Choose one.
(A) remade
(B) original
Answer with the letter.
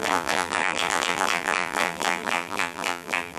A